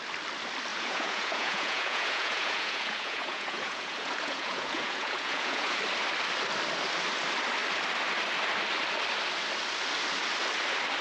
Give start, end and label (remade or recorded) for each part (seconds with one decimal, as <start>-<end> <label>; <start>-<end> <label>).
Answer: 0.0-0.7 recorded; 0.7-5.8 remade; 5.8-11.0 recorded